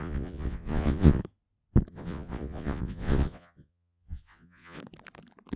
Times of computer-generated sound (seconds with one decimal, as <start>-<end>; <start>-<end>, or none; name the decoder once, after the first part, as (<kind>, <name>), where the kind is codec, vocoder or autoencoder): 0.0-1.2 (vocoder, Vocos); 1.9-4.8

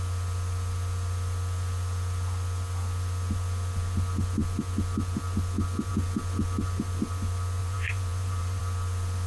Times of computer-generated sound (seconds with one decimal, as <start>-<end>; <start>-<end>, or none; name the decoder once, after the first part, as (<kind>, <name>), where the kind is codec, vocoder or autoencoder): 7.6-8.6 (vocoder, BigVGAN v2)

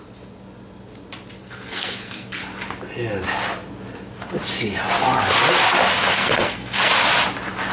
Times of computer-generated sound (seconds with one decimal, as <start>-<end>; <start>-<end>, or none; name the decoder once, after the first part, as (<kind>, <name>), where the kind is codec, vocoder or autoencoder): 1.4-2.4 (codec, SNAC); 6.1-6.9

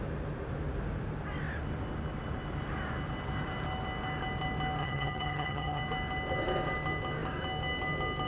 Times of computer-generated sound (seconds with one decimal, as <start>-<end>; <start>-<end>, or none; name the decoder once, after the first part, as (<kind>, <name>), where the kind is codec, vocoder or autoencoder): 4.8-5.8 (vocoder, HiFi-GAN)

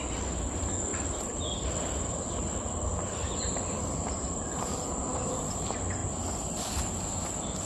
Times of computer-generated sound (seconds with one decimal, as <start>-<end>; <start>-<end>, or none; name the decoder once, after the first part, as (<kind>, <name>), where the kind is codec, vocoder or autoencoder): none

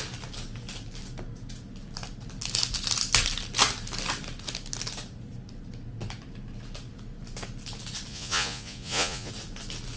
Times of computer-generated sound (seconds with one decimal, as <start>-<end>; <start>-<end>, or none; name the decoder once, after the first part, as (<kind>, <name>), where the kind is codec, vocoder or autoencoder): 8.1-9.3 (vocoder, Vocos)

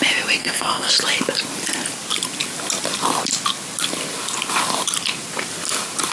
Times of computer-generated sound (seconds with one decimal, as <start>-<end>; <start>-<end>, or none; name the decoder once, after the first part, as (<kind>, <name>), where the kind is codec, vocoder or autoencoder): 0.4-0.9 (codec, SNAC)